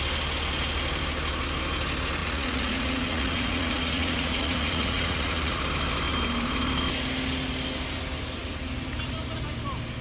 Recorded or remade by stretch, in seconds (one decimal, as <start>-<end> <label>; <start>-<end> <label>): 0.0-2.2 recorded; 2.2-5.6 remade; 5.6-10.0 recorded